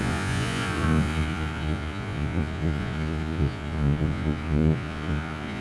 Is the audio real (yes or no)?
no